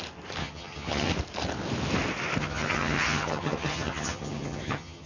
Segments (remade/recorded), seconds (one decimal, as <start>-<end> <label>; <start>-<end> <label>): 0.0-0.4 recorded; 0.4-1.1 remade; 1.1-2.4 recorded; 2.4-5.1 remade